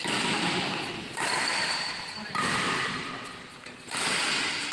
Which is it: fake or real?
real